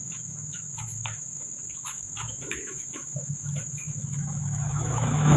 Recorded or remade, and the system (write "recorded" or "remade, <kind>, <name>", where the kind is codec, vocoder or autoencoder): remade, autoencoder, DAC-VAE